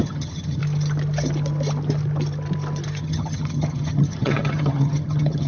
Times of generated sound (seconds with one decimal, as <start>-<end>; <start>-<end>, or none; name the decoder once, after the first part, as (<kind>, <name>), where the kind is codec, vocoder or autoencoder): 0.0-0.6 (vocoder, HiFi-GAN); 3.0-5.5